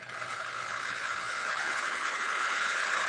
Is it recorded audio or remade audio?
remade